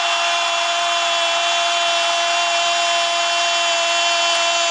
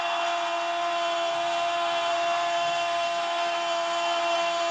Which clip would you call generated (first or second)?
second